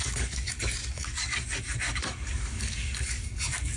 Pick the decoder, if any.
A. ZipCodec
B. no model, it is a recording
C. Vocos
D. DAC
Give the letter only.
D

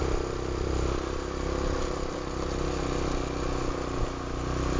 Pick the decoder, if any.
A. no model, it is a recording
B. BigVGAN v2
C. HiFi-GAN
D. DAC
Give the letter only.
A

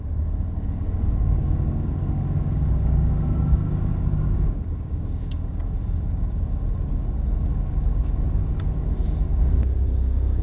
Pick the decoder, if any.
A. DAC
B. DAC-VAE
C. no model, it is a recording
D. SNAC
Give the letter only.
A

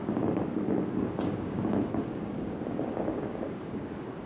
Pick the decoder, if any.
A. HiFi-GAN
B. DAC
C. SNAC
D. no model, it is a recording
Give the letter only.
B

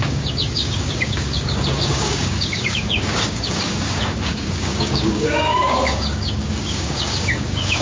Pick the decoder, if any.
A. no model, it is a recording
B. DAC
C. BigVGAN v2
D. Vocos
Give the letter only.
B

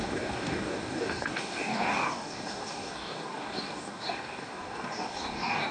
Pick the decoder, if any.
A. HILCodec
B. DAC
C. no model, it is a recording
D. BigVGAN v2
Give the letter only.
B